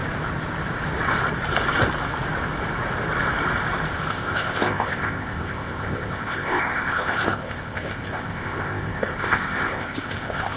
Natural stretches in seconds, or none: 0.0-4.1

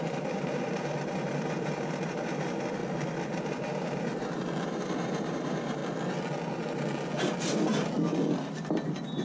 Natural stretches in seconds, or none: 2.8-3.5; 4.1-4.7; 5.8-9.2

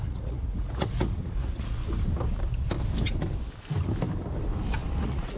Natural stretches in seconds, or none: 1.8-5.0

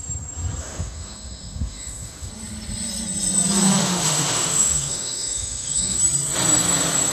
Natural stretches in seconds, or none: 0.0-0.6; 2.3-3.8; 6.0-7.1

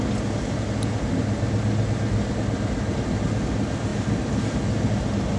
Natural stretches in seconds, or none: 0.0-5.4

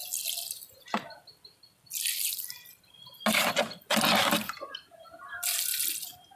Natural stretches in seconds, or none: 0.0-6.4

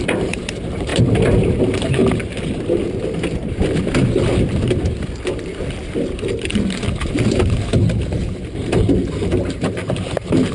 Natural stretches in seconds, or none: 2.0-7.0

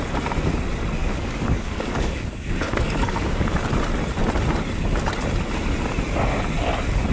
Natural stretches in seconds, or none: 0.0-1.0; 3.5-7.1